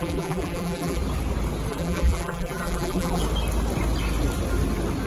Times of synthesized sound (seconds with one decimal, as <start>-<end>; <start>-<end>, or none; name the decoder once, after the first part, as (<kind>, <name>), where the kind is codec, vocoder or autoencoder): 0.0-1.0 (vocoder, BigVGAN v2); 1.7-3.2